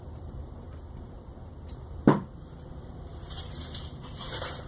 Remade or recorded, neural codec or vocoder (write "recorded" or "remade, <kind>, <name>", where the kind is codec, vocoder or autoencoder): remade, vocoder, BigVGAN v2